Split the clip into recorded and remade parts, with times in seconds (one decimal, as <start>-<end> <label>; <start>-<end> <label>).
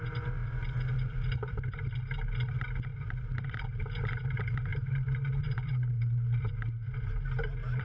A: 0.0-0.4 recorded; 0.4-1.5 remade; 1.5-2.9 recorded; 2.9-3.8 remade; 3.8-4.7 recorded; 4.7-5.7 remade; 5.7-7.8 recorded